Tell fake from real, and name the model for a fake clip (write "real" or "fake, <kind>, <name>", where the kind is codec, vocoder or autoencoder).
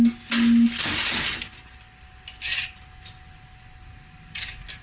real